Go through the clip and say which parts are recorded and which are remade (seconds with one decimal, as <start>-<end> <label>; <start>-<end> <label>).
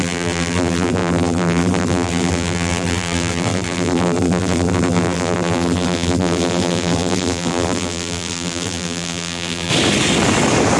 0.0-9.7 remade; 9.7-10.8 recorded